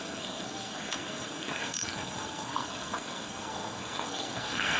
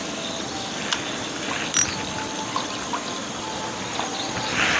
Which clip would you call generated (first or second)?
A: first